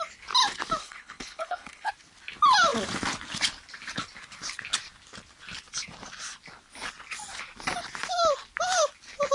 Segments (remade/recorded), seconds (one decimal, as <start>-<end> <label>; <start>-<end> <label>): 0.0-0.8 recorded; 0.8-1.9 remade; 1.9-9.3 recorded